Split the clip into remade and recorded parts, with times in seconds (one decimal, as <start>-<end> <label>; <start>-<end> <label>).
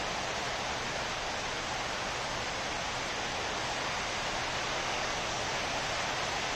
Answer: 0.0-4.8 recorded; 4.8-5.4 remade; 5.4-6.6 recorded